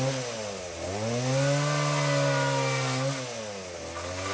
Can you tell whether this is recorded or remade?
recorded